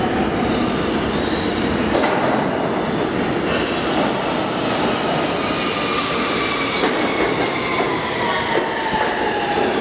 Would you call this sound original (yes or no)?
yes